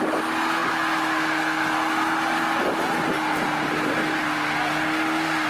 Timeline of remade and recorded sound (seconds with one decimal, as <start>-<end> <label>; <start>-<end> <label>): 0.0-5.5 recorded